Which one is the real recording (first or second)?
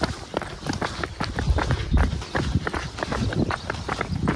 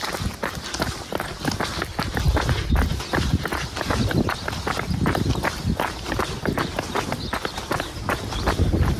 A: second